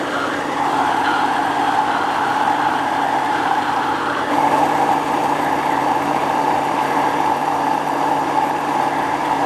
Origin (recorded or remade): remade